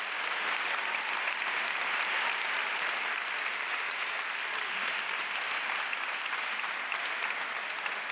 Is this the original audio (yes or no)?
yes